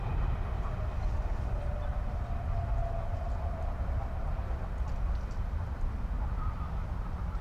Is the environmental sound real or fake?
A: real